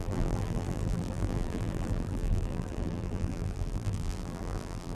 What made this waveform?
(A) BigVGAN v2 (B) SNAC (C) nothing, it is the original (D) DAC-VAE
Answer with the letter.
A